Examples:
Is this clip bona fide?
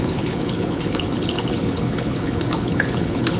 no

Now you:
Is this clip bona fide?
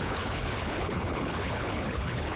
no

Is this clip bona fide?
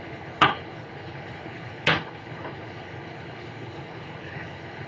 no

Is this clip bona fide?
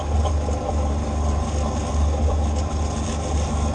yes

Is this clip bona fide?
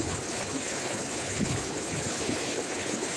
no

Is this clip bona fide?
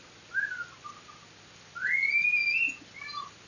yes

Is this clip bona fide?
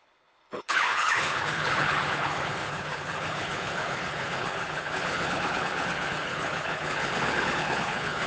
no